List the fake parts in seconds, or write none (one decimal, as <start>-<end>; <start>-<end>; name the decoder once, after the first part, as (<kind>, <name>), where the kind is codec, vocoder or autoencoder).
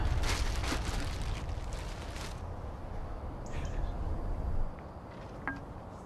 none